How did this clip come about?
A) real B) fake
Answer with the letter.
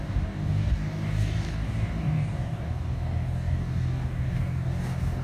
B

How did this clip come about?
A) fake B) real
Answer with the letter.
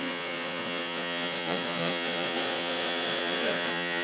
A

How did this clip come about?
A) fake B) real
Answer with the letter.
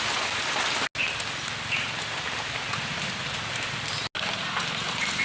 B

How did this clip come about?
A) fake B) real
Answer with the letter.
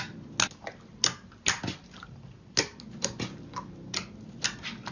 B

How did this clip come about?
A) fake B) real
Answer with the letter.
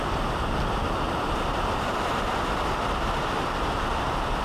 B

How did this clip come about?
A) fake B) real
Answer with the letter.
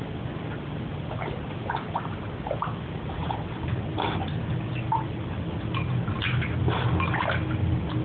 B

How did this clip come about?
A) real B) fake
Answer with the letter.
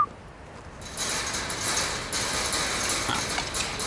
A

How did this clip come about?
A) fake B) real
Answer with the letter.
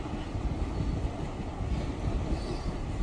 B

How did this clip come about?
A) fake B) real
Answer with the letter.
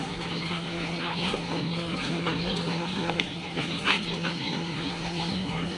A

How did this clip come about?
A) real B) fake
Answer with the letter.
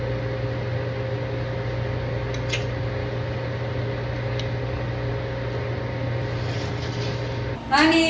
A